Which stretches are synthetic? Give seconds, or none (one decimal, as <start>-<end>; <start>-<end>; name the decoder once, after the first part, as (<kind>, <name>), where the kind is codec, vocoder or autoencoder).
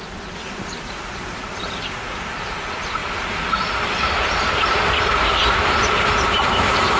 0.0-7.0 (vocoder, BigVGAN v2)